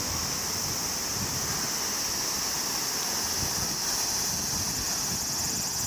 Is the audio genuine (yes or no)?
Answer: yes